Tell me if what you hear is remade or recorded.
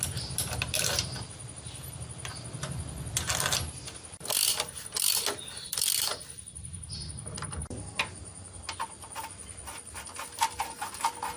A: recorded